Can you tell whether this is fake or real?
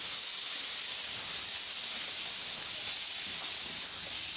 real